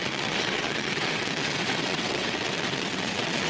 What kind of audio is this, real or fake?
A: fake